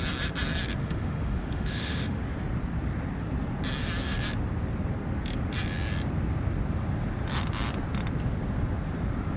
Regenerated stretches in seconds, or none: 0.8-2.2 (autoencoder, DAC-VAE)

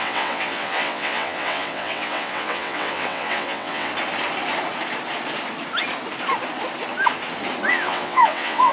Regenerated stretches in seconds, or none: 0.0-3.9 (vocoder, WaveNeXt); 7.7-8.7

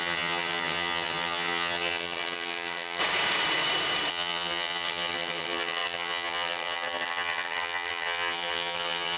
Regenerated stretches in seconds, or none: 0.0-3.0 (vocoder, HiFi-GAN); 4.1-9.2